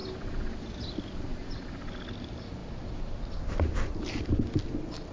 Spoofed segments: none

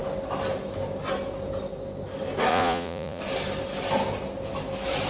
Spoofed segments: 2.5-3.2 (vocoder, Vocos)

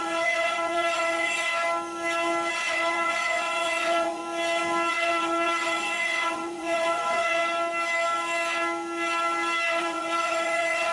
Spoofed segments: 0.0-1.5 (vocoder, Vocos); 2.5-4.2; 4.9-7.4; 9.8-10.9